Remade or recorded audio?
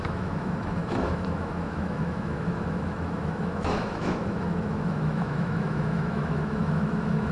remade